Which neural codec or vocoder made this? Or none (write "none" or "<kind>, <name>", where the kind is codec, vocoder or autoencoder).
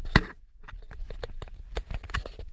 none